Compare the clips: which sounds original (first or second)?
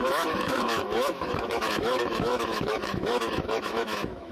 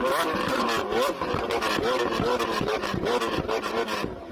second